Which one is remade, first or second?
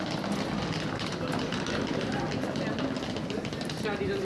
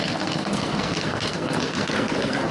second